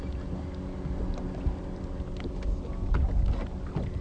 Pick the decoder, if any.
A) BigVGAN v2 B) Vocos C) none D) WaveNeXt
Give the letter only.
C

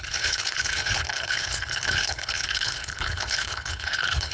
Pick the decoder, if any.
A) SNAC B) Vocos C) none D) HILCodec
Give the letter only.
D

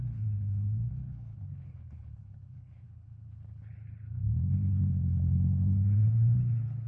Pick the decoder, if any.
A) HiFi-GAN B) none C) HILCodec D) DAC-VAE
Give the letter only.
C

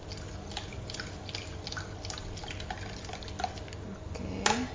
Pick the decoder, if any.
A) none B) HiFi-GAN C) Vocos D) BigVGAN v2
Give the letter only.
A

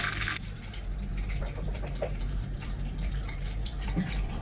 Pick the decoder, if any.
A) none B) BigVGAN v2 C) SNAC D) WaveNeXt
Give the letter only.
B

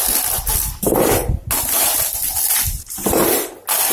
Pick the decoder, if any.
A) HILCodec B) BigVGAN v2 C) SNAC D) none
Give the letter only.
D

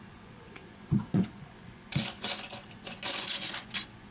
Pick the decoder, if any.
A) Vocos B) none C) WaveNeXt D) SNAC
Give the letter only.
A